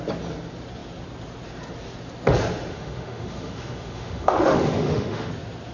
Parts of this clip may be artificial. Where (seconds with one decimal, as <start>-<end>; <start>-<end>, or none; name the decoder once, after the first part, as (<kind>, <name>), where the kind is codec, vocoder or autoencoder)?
2.7-5.3 (autoencoder, DAC-VAE)